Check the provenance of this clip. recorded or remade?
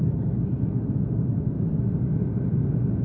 recorded